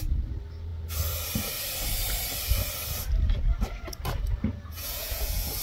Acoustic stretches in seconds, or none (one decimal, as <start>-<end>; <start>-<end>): 0.0-4.5